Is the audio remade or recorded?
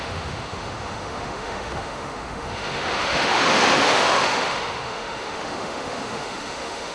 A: remade